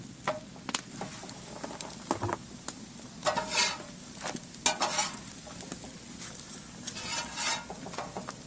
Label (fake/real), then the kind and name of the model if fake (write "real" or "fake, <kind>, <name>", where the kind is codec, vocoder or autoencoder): real